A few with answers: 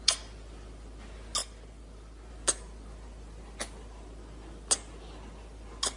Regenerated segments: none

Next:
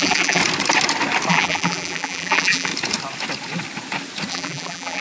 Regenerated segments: 0.0-0.4 (vocoder, BigVGAN v2); 1.3-2.7; 4.3-5.0

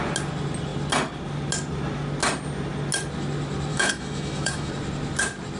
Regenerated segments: 3.7-4.7 (autoencoder, DAC-VAE)